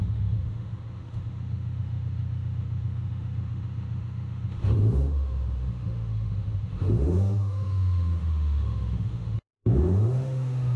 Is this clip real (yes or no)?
no